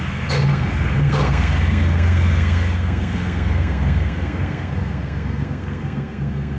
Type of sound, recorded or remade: remade